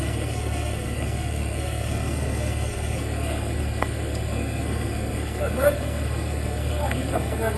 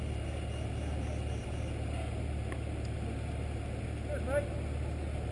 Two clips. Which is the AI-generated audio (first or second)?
first